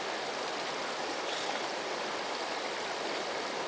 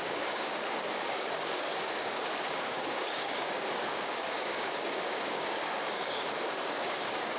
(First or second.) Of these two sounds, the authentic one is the first